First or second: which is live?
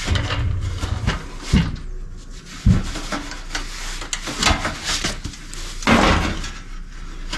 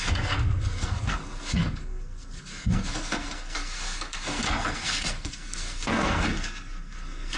first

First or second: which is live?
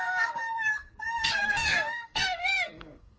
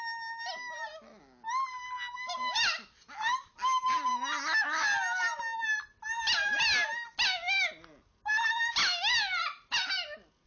second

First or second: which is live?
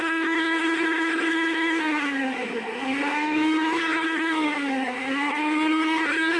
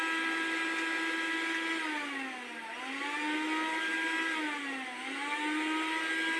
second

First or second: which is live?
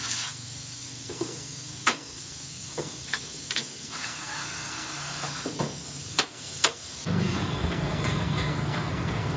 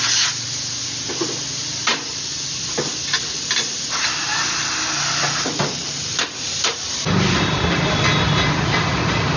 second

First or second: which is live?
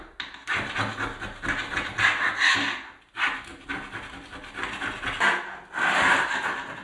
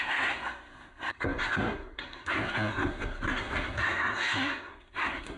first